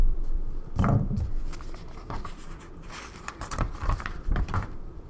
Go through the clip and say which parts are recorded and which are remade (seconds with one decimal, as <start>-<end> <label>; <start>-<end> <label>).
0.0-1.4 remade; 1.4-1.8 recorded; 1.8-5.1 remade